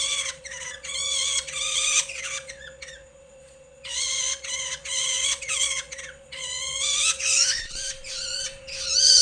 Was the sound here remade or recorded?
remade